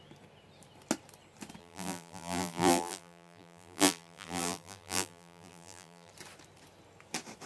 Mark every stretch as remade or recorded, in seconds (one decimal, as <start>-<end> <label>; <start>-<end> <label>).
0.0-1.6 recorded; 1.6-6.1 remade; 6.1-7.5 recorded